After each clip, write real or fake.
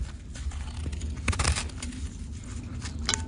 fake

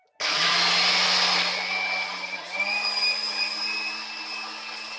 real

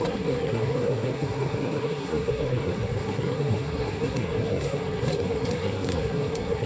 fake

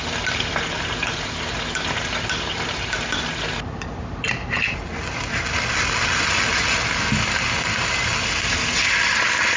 real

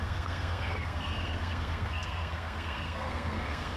fake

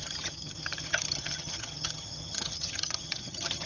fake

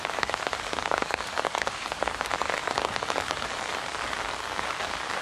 fake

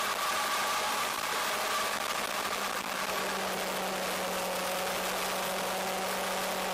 real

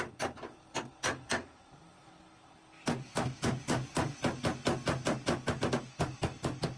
real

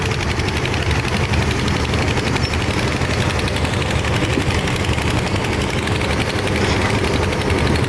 real